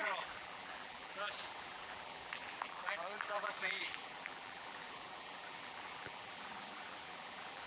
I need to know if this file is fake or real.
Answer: fake